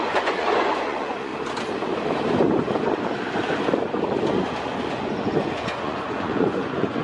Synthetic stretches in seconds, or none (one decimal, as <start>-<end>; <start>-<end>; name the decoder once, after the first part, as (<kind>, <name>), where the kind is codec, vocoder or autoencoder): 0.0-1.3 (vocoder, Vocos); 4.4-7.0